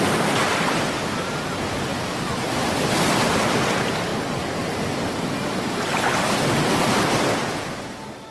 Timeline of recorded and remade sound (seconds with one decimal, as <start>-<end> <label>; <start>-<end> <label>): 0.0-8.3 recorded